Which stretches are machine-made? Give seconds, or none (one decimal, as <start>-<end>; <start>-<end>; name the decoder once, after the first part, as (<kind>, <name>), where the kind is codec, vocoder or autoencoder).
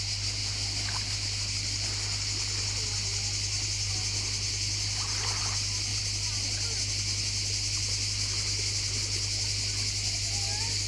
none